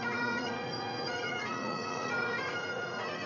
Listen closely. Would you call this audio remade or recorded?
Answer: remade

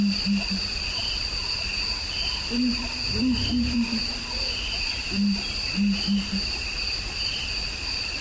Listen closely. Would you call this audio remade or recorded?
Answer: recorded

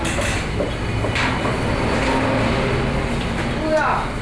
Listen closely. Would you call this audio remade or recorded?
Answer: recorded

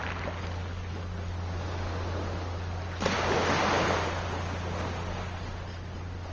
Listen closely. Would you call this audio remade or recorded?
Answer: recorded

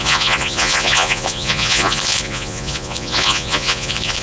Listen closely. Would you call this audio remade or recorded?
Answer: remade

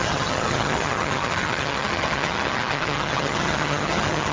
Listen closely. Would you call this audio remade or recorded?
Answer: remade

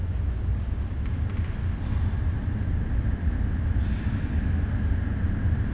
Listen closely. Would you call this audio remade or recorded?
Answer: recorded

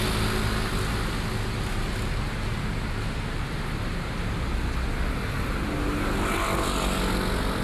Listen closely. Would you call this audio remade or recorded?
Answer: recorded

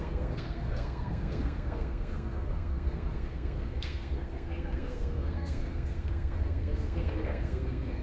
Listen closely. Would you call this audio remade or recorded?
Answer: remade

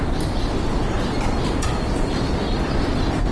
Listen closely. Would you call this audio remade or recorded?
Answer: recorded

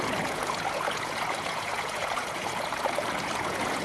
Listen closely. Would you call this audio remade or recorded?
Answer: remade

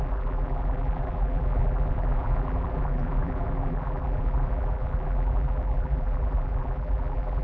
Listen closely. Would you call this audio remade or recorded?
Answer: remade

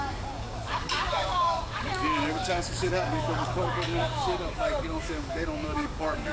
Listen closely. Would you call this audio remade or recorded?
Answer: remade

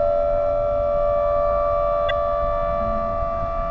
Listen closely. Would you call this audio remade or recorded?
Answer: recorded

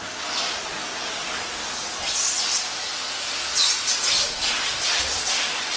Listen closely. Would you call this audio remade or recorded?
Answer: recorded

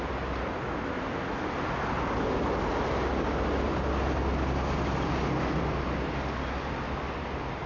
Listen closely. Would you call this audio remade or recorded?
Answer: recorded